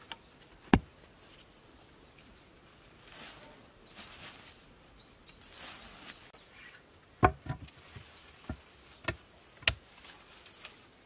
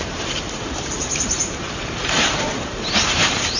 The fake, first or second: second